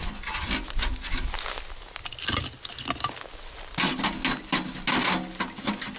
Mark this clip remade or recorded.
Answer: recorded